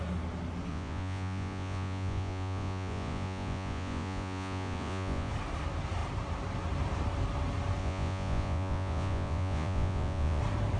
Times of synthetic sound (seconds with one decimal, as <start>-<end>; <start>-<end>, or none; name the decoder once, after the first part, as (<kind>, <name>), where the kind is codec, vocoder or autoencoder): 0.7-5.3 (vocoder, Vocos); 7.8-10.4